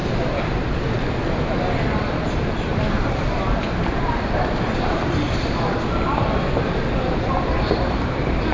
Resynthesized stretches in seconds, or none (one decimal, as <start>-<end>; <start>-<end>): 2.0-8.5